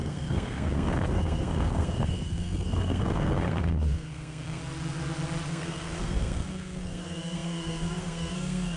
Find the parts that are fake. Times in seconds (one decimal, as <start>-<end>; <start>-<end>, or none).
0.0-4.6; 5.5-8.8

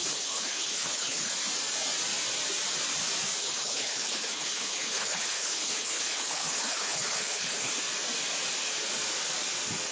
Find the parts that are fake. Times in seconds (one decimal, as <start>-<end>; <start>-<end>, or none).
0.0-1.3; 3.4-7.7

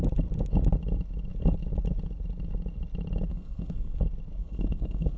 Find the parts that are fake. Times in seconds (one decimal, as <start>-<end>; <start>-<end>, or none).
3.3-4.0; 4.4-5.2

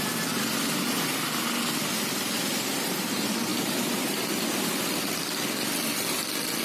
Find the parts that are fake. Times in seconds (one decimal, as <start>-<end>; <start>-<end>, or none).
none

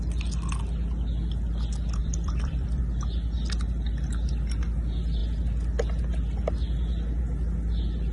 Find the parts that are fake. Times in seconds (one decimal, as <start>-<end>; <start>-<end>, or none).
2.0-2.8